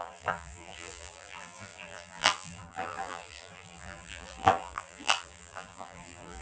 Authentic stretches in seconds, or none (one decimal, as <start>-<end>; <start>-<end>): none